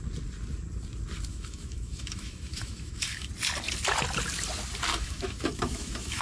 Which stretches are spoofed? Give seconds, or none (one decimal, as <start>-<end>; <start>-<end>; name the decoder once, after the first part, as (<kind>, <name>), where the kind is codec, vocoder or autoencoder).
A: 1.3-3.3 (autoencoder, DAC-VAE); 4.9-6.2